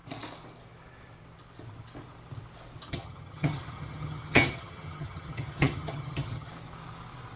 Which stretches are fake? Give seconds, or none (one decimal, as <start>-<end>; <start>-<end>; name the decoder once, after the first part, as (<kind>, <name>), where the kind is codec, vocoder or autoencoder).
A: 2.9-6.5 (vocoder, HiFi-GAN)

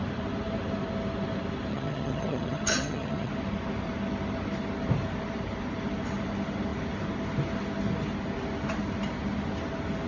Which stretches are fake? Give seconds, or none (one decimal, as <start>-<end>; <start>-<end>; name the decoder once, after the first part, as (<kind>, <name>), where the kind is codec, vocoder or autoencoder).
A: 1.7-3.3 (vocoder, HiFi-GAN)

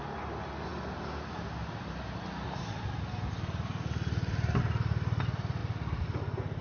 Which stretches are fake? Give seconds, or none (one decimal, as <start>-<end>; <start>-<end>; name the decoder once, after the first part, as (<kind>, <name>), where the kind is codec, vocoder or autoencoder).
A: none

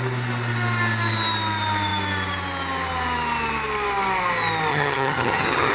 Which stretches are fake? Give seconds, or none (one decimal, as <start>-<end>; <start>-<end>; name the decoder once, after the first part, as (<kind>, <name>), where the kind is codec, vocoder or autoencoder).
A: 4.7-5.7 (vocoder, HiFi-GAN)

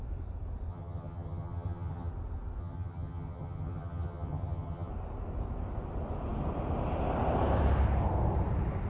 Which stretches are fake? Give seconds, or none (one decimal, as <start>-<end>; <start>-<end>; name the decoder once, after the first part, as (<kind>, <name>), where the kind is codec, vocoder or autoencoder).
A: 0.7-2.1 (vocoder, HiFi-GAN); 2.6-4.9

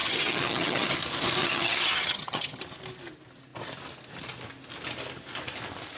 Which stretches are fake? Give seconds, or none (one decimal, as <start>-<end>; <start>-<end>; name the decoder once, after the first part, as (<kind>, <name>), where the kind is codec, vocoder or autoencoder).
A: 0.0-0.9 (vocoder, HiFi-GAN); 1.4-2.6